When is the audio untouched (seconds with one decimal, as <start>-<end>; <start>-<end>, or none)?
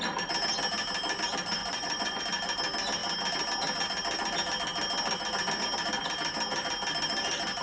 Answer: 0.0-1.6; 2.2-7.6